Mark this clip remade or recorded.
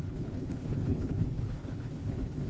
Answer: remade